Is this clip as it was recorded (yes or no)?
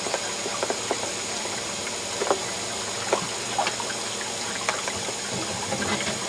yes